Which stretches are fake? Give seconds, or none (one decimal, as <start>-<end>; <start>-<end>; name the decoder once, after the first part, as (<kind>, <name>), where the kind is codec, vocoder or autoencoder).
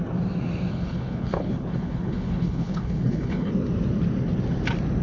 0.7-3.5 (codec, HILCodec)